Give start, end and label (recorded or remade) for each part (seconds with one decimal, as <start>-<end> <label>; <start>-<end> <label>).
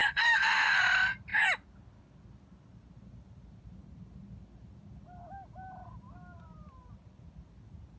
0.0-0.8 remade; 0.8-8.0 recorded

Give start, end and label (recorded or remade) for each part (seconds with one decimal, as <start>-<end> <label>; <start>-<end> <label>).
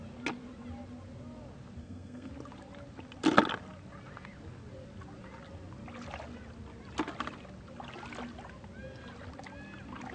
0.0-1.8 recorded; 1.8-2.3 remade; 2.3-10.1 recorded